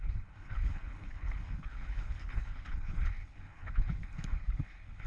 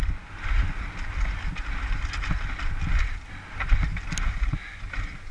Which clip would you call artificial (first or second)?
first